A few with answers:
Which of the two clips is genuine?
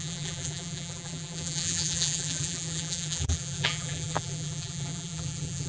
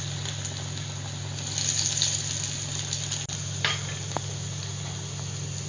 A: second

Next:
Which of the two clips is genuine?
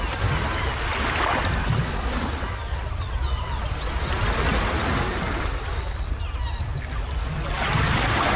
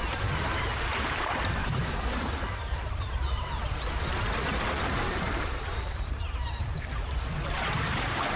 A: first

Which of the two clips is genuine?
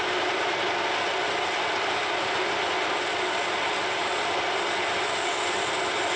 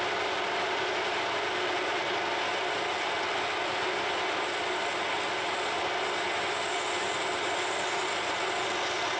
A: second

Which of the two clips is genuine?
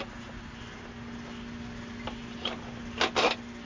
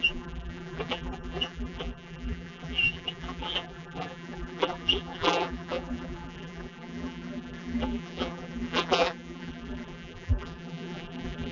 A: first